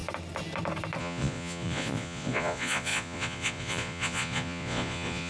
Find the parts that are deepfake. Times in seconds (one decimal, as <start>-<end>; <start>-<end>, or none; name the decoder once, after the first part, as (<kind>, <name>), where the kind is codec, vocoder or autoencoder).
1.0-5.3 (vocoder, Vocos)